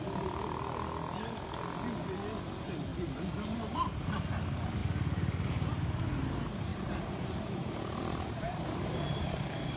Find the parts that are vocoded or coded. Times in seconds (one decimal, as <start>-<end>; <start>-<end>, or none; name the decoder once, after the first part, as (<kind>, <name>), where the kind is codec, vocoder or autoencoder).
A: 6.7-9.8 (vocoder, BigVGAN v2)